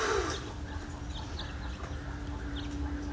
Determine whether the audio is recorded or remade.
recorded